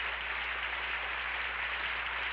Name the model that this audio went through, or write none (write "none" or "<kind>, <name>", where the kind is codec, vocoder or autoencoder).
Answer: none